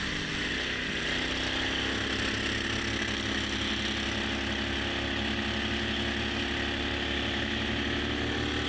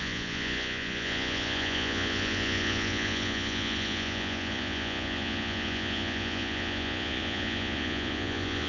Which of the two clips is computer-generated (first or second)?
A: second